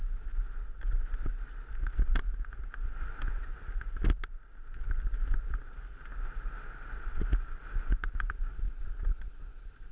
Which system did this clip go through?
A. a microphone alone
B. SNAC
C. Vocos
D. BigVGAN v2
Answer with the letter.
A